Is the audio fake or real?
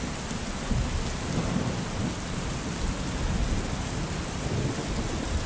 real